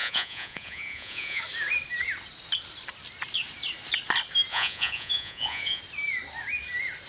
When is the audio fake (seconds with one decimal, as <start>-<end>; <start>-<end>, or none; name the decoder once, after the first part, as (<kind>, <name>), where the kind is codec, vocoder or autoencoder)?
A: 0.0-1.4 (vocoder, Vocos); 4.5-5.8

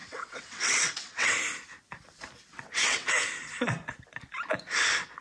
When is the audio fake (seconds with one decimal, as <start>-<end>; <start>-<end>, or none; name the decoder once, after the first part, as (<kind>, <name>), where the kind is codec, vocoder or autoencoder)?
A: 0.0-1.3 (vocoder, WaveNeXt); 2.5-3.1

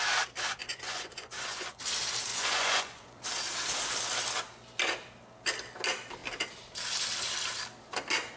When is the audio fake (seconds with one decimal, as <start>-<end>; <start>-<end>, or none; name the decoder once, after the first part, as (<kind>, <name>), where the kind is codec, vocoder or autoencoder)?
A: 0.6-1.8 (vocoder, Vocos); 2.3-3.2

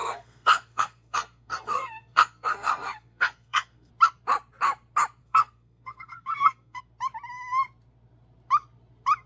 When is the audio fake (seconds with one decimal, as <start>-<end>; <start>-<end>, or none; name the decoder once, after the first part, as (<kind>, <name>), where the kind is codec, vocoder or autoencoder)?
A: 0.0-3.9 (codec, SNAC); 5.2-6.8